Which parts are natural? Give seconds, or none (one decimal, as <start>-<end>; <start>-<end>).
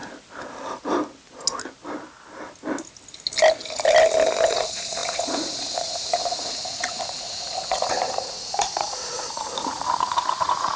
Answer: 0.0-4.5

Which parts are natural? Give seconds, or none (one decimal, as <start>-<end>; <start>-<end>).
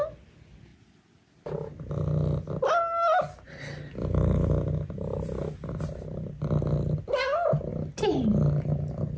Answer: 0.0-9.2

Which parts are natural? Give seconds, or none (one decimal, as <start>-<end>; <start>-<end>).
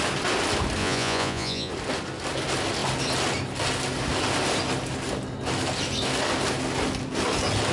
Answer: 0.0-0.8; 1.7-7.7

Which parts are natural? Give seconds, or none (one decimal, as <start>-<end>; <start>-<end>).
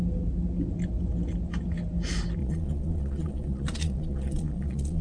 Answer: 0.0-2.4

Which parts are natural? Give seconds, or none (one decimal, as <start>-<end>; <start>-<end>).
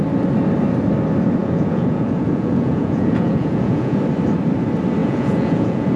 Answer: 0.0-1.4; 4.0-5.0